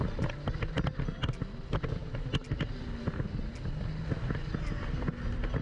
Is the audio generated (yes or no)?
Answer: no